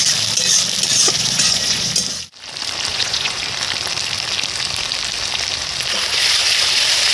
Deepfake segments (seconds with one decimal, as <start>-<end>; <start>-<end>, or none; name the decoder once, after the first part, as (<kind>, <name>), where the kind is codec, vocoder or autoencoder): 0.9-1.9 (vocoder, Vocos); 2.9-3.4